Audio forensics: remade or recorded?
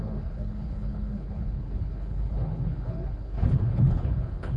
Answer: remade